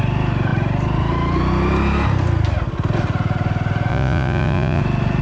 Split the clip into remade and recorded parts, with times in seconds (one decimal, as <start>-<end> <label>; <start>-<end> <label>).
0.0-3.9 recorded; 3.9-4.8 remade; 4.8-5.2 recorded